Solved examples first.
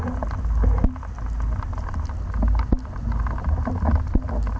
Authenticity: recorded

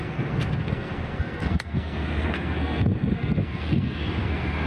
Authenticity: remade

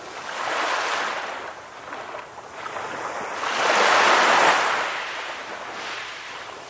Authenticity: recorded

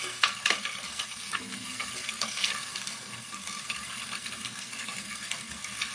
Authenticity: remade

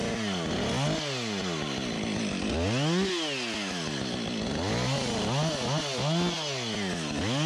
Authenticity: recorded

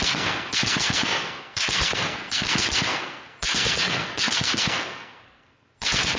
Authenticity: remade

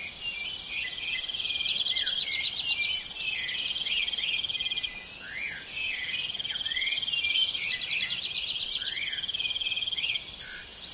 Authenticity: recorded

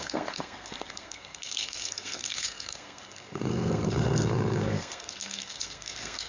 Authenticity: remade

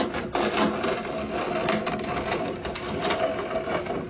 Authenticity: recorded